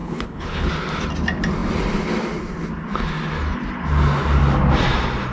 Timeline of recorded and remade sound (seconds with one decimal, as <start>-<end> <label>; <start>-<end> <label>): 0.0-0.7 remade; 0.7-5.3 recorded